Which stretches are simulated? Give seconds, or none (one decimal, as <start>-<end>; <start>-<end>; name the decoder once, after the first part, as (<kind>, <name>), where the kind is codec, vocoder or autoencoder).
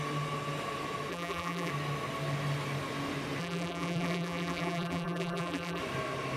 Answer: 1.1-1.7 (vocoder, BigVGAN v2); 3.4-5.8